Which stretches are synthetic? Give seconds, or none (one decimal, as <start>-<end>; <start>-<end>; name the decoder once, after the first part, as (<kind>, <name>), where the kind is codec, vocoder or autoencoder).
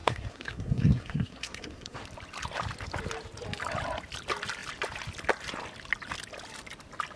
0.0-2.0 (codec, SNAC)